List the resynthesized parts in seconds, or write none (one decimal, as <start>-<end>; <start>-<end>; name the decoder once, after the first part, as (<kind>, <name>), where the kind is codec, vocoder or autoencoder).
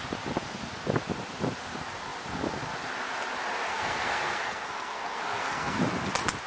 3.7-5.8 (codec, SNAC)